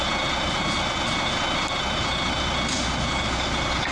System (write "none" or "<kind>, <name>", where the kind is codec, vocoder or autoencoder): none